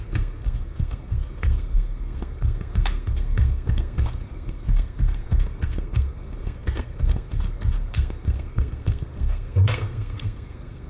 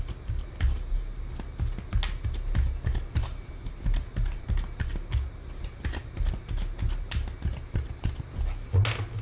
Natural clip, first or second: second